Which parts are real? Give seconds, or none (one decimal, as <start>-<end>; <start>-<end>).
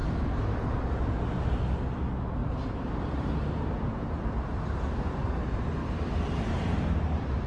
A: 0.0-2.4; 4.1-5.8